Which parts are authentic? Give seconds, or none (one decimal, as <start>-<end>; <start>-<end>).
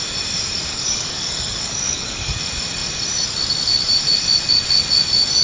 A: 0.0-0.7; 2.4-5.4